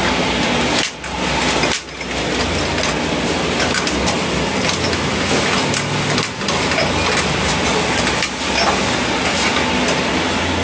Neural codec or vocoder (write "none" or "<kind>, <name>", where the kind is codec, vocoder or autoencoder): none